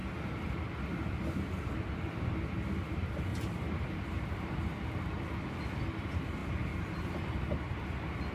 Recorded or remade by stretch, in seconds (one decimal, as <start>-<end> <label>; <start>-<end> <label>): 0.0-3.3 recorded; 3.3-4.6 remade; 4.6-8.3 recorded